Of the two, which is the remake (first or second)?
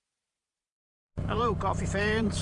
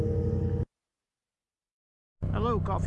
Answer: first